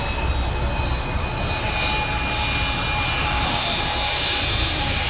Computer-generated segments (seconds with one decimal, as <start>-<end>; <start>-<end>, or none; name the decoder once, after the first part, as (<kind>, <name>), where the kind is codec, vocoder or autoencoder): none